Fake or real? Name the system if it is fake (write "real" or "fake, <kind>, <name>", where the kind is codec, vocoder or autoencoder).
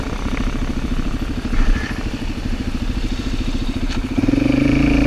fake, vocoder, BigVGAN v2